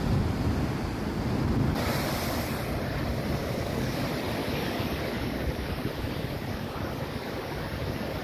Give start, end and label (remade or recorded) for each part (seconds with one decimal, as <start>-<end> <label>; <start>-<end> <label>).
0.0-3.4 recorded; 3.4-4.0 remade; 4.0-4.4 recorded; 4.4-8.2 remade